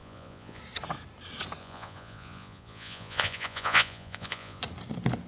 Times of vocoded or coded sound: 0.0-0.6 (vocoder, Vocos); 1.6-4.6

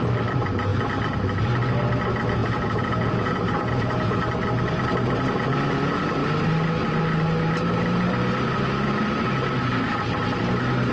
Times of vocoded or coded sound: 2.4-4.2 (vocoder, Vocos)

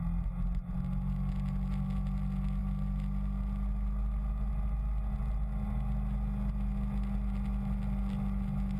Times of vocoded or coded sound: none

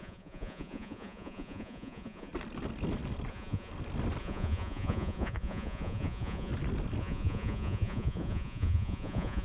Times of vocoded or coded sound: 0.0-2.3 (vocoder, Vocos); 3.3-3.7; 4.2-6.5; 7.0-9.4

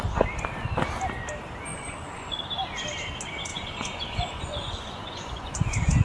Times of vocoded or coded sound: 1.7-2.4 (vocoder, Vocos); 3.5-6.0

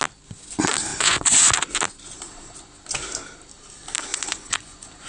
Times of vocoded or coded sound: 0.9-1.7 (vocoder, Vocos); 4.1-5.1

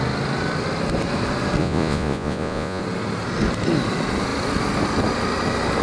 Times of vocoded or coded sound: 1.6-2.8 (vocoder, Vocos)